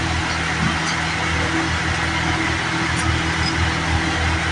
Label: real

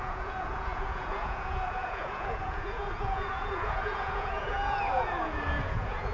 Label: fake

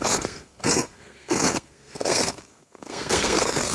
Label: fake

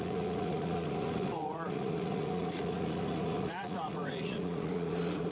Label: fake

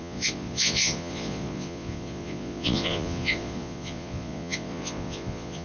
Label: fake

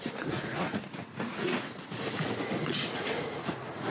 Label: fake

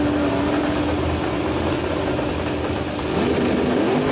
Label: real